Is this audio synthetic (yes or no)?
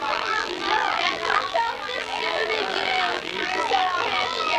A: yes